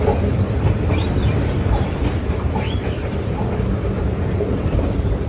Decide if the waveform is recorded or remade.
remade